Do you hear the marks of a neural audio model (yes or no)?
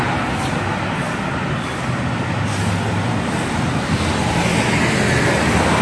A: no